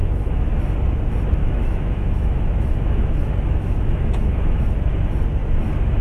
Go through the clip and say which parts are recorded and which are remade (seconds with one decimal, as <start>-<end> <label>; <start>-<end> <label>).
0.0-0.6 remade; 0.6-1.4 recorded; 1.4-4.6 remade; 4.6-6.0 recorded